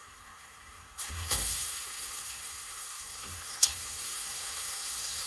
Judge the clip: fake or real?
fake